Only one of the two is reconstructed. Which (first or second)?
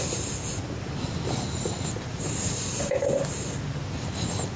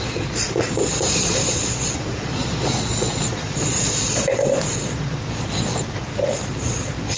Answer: second